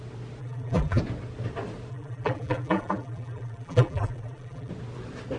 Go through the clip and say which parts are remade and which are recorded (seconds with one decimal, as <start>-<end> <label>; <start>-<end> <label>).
0.0-0.4 recorded; 0.4-1.0 remade; 1.0-1.9 recorded; 1.9-4.7 remade; 4.7-5.4 recorded